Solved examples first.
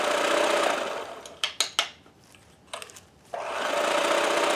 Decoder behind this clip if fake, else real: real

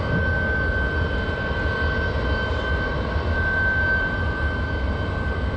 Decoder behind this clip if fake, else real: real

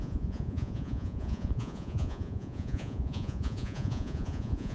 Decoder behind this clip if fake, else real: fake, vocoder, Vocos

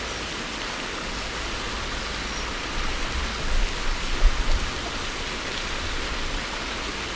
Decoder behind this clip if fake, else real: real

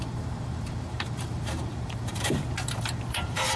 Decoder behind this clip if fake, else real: fake, vocoder, BigVGAN v2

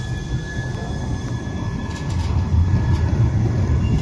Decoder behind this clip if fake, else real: real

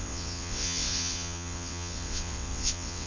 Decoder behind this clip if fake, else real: fake, vocoder, WaveNeXt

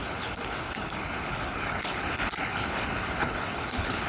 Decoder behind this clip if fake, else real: fake, codec, HILCodec